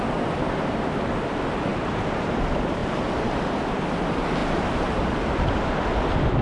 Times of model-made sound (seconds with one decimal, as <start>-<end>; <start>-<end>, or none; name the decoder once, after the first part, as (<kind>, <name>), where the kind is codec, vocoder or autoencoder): 1.7-2.3 (vocoder, BigVGAN v2); 2.8-3.4; 4.4-5.3